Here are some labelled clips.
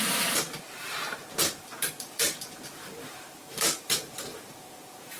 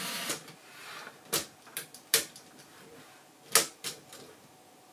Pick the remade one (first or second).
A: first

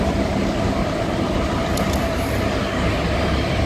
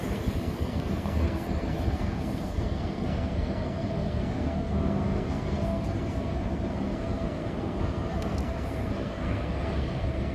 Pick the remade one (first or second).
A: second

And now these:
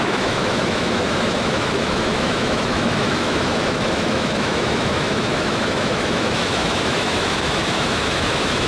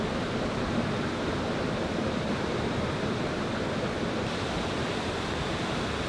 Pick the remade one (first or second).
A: first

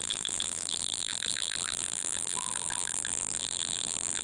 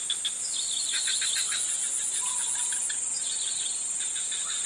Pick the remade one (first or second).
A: first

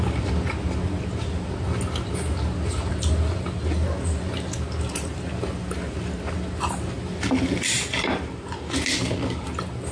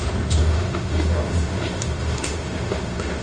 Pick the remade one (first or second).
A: second